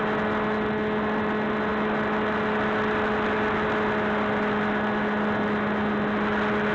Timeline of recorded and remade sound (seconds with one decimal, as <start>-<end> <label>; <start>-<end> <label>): 0.0-6.7 recorded